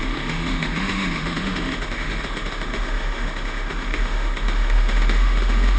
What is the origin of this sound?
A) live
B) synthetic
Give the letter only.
B